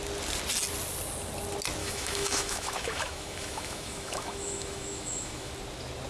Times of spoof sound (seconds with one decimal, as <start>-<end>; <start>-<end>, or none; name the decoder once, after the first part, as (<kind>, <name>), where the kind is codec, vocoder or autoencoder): 1.8-5.5 (autoencoder, DAC-VAE)